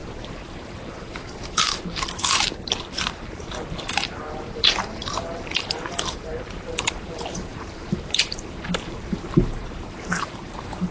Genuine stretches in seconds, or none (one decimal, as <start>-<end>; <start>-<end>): none